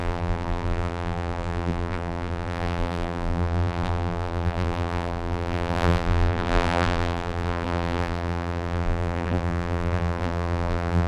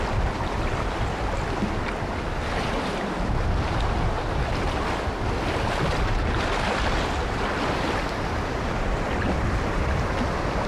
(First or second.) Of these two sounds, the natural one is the second